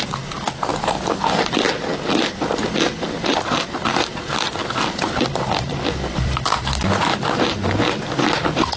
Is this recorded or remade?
recorded